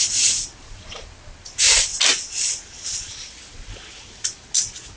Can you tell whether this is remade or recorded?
recorded